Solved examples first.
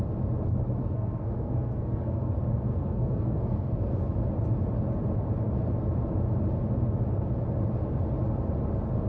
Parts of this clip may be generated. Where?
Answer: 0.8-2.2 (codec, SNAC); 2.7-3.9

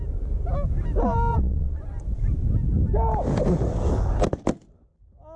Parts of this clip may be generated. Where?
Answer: 1.3-1.8 (vocoder, Vocos)

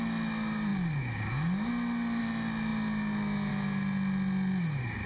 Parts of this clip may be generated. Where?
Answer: none

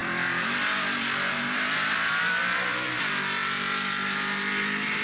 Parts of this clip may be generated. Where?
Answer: 0.0-3.0 (vocoder, BigVGAN v2)

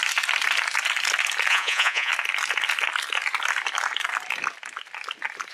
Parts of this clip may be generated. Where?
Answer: 1.5-2.1 (vocoder, Vocos)

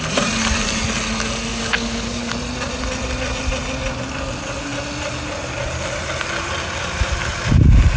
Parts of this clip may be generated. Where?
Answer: 1.5-2.3 (codec, DAC)